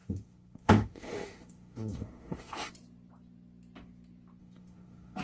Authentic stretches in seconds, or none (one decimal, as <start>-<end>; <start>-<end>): 2.7-4.4